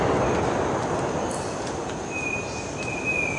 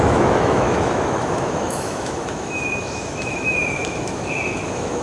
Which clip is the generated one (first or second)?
second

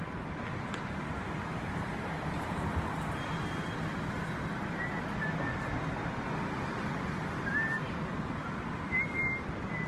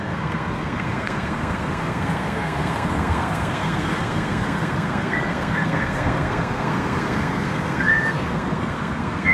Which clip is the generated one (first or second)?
second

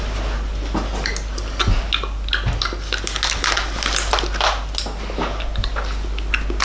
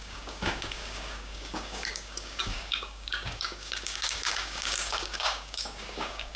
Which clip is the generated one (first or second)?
second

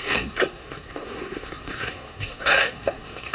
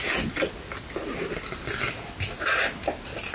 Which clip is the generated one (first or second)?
first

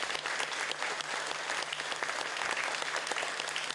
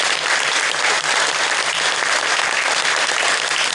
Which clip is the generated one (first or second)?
second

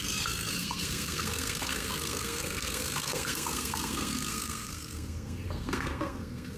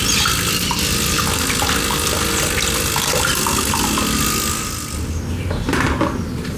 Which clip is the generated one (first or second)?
first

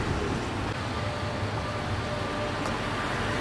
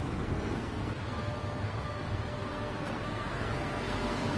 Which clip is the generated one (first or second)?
second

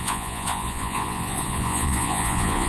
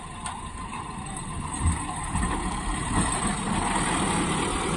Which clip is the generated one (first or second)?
first